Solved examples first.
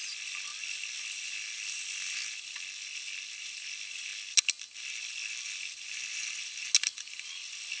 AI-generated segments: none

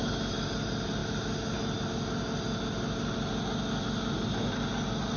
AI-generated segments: none

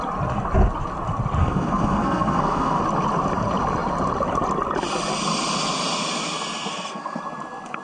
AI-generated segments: 1.4-2.8; 6.7-7.2

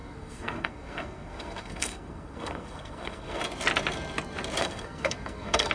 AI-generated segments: 0.0-3.4; 4.6-5.7

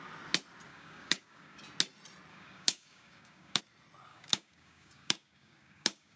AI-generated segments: 0.7-1.6; 2.3-3.6; 4.1-6.2

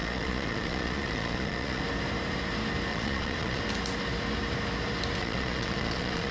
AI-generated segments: 0.0-1.8; 2.9-3.6; 5.2-6.3

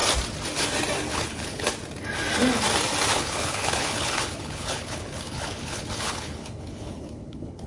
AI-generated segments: 1.1-1.7; 3.1-7.7